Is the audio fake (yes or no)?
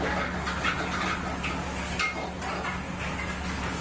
no